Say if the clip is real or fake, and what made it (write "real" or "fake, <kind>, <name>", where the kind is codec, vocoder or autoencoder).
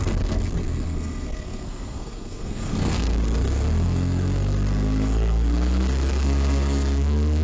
fake, codec, SNAC